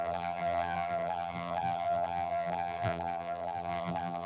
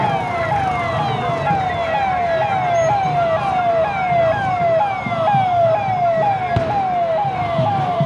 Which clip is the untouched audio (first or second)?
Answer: second